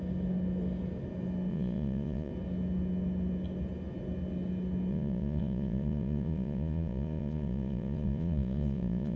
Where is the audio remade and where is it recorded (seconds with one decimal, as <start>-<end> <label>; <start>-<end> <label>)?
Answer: 0.0-1.5 recorded; 1.5-2.3 remade; 2.3-4.9 recorded; 4.9-9.2 remade